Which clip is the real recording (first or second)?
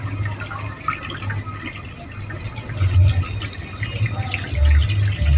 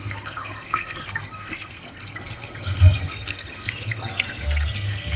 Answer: first